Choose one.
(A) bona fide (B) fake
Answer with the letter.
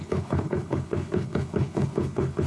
B